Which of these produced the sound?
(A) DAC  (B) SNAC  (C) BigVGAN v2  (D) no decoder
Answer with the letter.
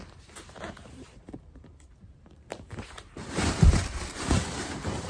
C